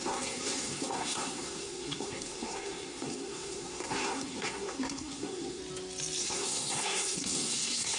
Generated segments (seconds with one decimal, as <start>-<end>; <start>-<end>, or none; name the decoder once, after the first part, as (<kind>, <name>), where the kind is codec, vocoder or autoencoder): 0.0-5.6 (codec, SNAC); 6.2-8.0